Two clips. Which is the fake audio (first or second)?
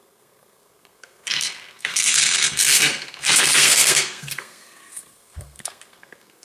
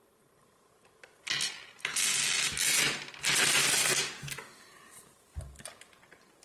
first